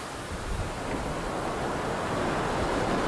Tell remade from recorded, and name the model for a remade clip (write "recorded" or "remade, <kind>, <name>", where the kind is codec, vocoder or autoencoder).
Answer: recorded